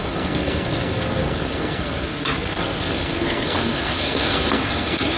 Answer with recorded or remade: remade